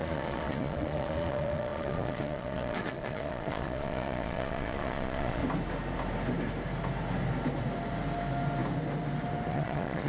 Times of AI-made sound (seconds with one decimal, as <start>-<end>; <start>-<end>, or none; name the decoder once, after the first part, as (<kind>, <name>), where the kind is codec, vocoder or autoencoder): 0.0-5.4 (vocoder, Vocos); 9.5-10.1